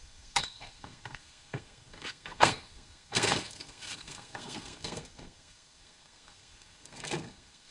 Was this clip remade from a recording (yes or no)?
yes